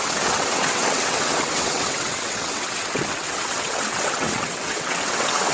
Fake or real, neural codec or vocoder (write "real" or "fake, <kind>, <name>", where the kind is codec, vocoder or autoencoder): fake, vocoder, WaveNeXt